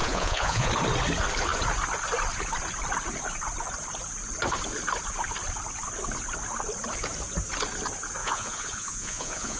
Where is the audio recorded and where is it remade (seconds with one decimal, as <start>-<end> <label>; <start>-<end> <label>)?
0.0-0.7 remade; 0.7-8.2 recorded; 8.2-9.6 remade